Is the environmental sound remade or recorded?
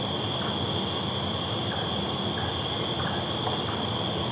recorded